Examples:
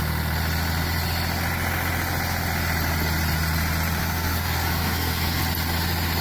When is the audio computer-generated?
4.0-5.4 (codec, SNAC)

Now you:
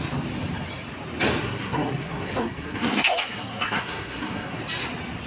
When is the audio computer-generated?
1.4-4.6 (codec, SNAC)

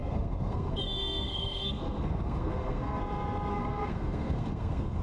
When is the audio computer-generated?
0.0-3.0 (codec, SNAC); 3.5-5.0

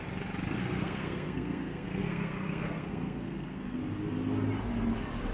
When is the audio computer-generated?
0.6-3.8 (codec, SNAC)

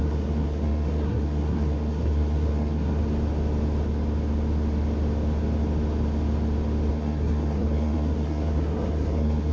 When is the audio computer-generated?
0.0-3.0 (codec, SNAC); 6.9-9.5